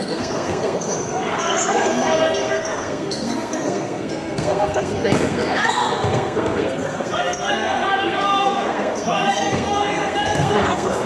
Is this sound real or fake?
fake